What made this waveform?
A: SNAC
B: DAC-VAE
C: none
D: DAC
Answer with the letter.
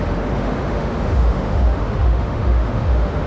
B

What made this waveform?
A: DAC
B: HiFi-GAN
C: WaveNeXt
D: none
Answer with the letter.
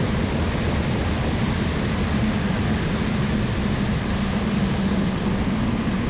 D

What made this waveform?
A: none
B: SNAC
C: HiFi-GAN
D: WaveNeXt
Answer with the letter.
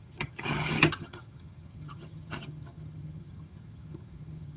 C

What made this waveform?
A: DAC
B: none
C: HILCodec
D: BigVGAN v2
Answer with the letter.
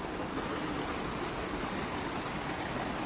B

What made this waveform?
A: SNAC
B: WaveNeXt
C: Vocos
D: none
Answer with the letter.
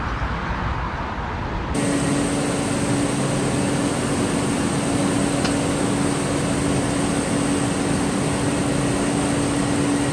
D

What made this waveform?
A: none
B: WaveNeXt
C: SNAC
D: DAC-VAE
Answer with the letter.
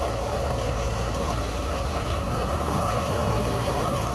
C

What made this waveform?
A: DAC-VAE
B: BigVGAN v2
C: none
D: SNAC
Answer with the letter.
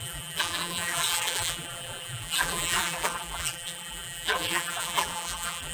B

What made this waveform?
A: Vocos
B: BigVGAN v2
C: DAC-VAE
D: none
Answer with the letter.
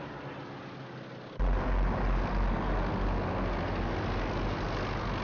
D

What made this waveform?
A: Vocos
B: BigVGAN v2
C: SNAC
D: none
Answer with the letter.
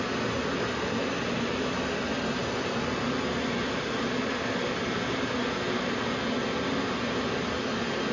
D